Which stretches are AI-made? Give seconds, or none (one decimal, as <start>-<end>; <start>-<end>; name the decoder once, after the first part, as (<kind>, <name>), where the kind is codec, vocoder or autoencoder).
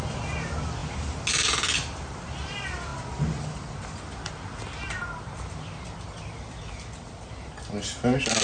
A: none